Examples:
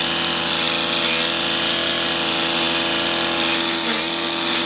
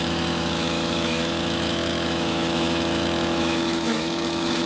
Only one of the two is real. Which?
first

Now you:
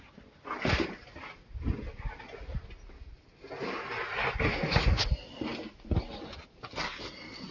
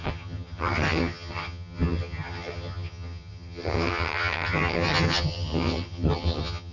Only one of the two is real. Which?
first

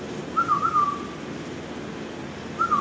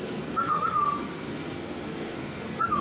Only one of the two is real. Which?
first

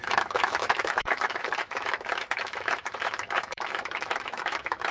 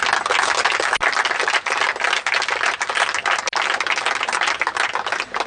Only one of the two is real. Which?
second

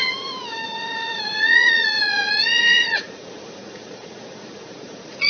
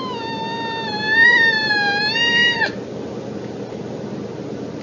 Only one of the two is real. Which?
second